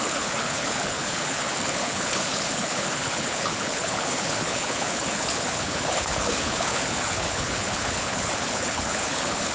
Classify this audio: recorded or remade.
remade